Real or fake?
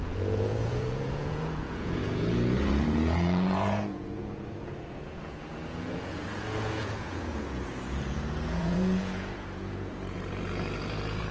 fake